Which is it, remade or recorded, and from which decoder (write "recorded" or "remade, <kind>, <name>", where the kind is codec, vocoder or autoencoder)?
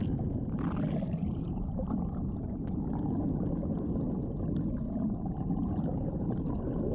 recorded